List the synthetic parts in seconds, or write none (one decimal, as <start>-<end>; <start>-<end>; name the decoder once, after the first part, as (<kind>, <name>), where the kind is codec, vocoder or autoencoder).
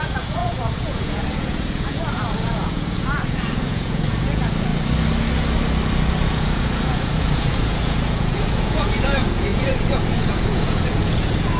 0.0-4.7 (vocoder, Vocos); 6.2-11.6